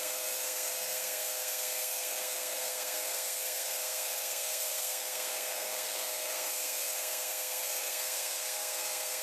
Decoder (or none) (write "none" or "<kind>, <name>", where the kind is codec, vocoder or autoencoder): codec, SNAC